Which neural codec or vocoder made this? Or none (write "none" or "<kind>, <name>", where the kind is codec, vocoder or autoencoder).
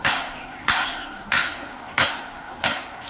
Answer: codec, SNAC